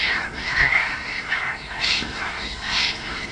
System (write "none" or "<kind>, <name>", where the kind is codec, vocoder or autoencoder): codec, SNAC